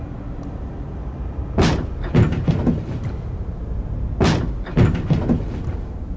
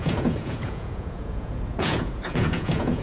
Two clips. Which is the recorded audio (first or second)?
first